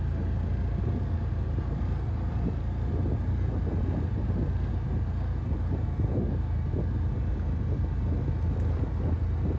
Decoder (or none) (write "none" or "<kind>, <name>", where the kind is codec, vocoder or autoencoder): none